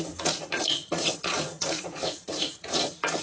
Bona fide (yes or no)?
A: no